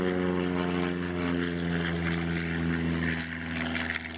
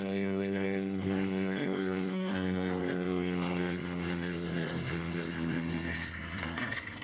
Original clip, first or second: first